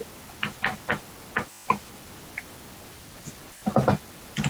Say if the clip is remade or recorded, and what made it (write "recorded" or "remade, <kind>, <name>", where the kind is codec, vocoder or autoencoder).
recorded